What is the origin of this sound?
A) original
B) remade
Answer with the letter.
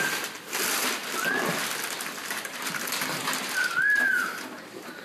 B